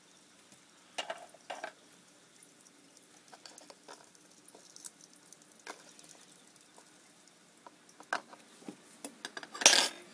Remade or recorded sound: recorded